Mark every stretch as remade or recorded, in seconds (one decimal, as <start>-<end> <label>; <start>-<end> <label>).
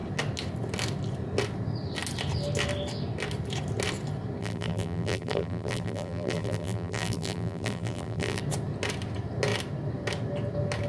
0.0-4.4 recorded; 4.4-8.4 remade; 8.4-10.9 recorded